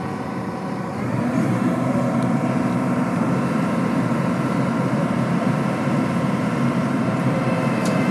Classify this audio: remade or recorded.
remade